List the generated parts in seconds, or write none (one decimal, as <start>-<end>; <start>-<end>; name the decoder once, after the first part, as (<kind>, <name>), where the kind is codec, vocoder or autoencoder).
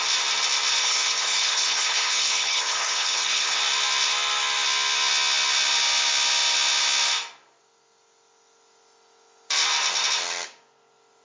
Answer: 0.8-3.6 (codec, HILCodec)